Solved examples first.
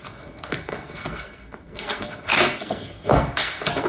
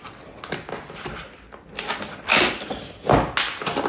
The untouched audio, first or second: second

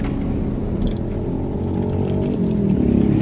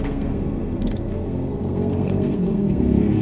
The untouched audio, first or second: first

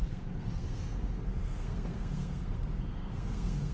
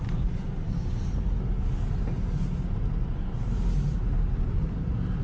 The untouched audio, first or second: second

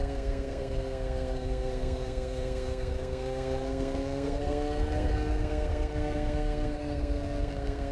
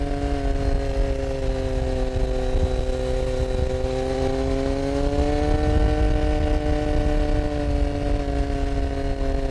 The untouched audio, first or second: second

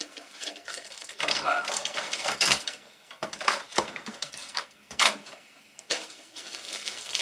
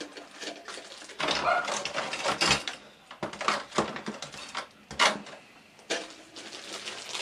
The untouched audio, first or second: second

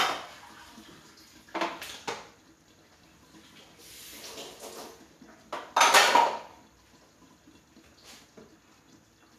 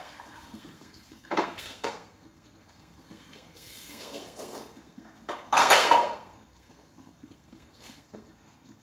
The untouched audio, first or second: first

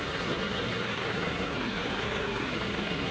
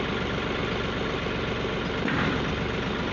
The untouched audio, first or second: second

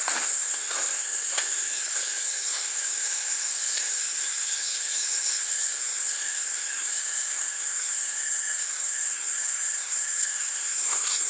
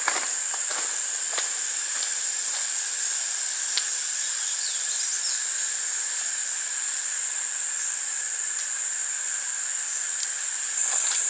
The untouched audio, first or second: second